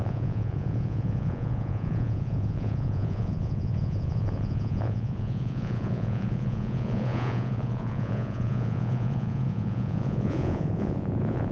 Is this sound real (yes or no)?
no